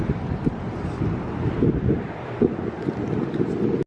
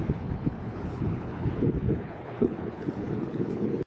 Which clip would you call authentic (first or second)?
first